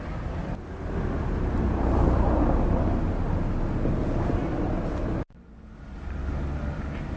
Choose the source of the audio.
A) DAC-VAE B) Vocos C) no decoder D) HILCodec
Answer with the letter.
C